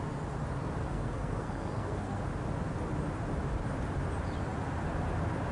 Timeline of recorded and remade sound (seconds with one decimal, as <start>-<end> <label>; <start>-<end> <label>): 0.0-0.8 recorded; 0.8-2.2 remade; 2.2-5.5 recorded